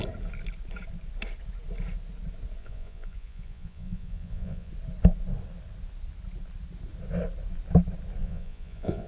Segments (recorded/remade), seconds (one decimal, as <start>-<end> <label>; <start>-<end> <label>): 0.0-2.6 recorded; 2.6-4.7 remade; 4.7-8.2 recorded; 8.2-9.1 remade